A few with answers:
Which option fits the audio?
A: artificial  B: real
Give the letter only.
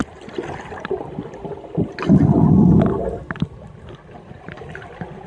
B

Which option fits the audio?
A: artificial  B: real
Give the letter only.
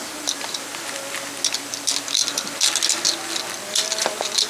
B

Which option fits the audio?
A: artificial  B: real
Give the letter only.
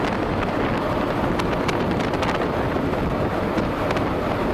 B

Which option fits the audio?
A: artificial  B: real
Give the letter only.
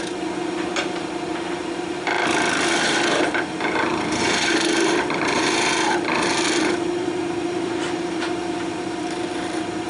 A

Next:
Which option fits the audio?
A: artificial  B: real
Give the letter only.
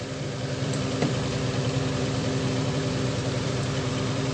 A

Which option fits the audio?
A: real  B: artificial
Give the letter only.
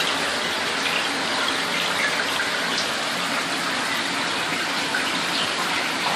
A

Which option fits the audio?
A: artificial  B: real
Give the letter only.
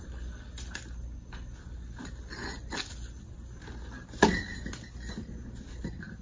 B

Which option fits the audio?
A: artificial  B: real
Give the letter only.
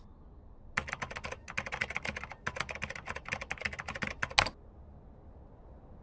B